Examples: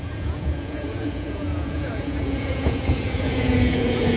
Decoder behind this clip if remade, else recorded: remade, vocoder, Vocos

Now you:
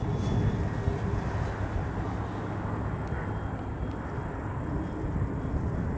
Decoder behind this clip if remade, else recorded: recorded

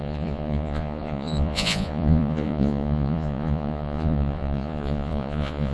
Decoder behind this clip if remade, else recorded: remade, vocoder, Vocos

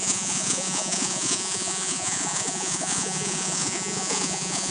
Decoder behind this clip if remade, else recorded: remade, vocoder, Vocos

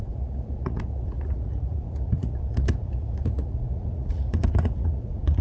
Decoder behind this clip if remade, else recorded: remade, vocoder, Vocos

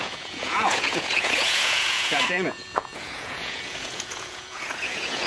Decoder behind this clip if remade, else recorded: remade, vocoder, Vocos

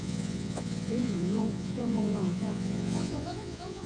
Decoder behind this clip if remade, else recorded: remade, vocoder, Vocos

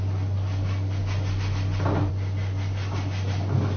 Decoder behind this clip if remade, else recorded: recorded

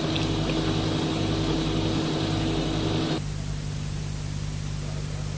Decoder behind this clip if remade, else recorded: recorded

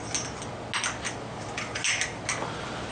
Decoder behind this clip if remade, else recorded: recorded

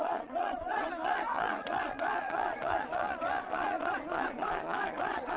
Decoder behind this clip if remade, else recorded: remade, vocoder, Vocos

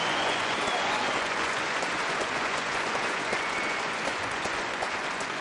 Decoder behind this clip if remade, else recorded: remade, vocoder, Vocos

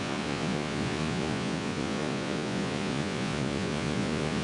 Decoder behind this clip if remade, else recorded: remade, vocoder, Vocos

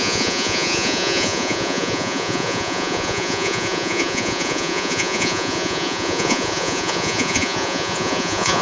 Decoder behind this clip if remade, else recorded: remade, vocoder, Vocos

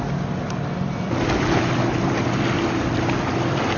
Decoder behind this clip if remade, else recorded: recorded